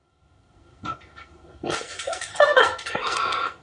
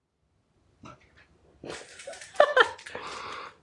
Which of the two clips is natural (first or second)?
second